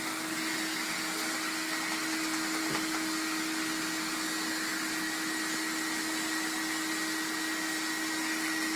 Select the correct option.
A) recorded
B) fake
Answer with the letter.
A